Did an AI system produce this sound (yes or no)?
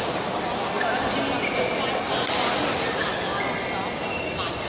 no